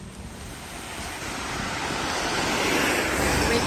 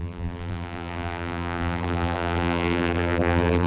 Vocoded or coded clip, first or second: second